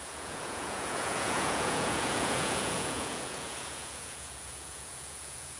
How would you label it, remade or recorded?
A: remade